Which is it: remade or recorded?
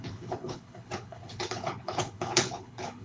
remade